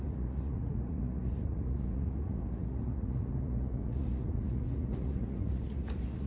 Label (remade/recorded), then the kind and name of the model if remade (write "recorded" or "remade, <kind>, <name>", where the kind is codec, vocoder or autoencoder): remade, vocoder, Vocos